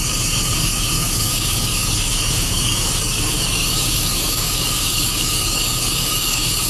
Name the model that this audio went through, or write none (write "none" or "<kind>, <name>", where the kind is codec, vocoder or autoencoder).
codec, DAC